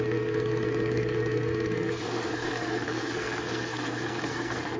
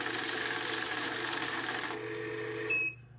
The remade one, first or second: first